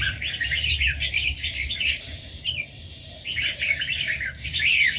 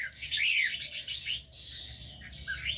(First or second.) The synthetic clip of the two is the first